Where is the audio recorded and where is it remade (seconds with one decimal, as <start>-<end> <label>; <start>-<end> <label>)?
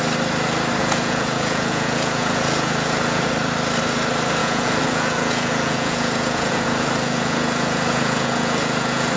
0.0-0.8 recorded; 0.8-3.3 remade; 3.3-4.4 recorded; 4.4-9.2 remade